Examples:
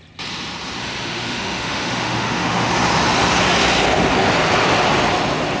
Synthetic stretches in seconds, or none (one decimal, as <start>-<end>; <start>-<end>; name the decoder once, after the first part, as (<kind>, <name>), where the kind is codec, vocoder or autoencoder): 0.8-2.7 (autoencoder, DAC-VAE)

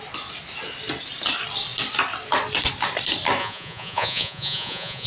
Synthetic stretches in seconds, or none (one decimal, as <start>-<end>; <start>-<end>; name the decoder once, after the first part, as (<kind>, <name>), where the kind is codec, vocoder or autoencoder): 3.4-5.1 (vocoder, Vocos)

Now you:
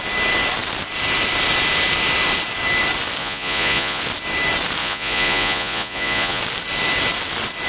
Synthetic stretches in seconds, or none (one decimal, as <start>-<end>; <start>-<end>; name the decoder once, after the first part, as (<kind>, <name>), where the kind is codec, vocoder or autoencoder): 3.2-4.0 (vocoder, Vocos); 4.8-6.4

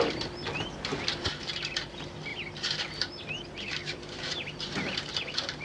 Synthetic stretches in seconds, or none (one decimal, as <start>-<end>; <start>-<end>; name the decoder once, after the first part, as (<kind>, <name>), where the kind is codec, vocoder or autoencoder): 0.9-1.5 (vocoder, BigVGAN v2)

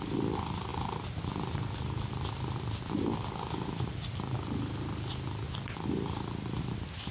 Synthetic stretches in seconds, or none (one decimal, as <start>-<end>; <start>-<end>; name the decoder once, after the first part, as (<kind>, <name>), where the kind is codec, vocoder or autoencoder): none

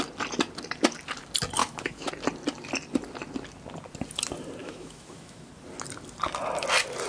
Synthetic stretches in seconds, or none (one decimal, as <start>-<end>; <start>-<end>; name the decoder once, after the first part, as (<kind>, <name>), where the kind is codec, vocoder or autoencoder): 1.6-2.1 (autoencoder, DAC-VAE); 4.6-5.5

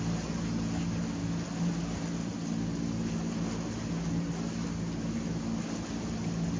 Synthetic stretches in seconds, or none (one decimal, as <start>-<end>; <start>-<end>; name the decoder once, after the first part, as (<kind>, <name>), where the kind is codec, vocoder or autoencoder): none